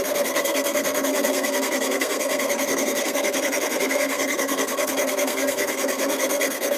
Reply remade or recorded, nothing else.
remade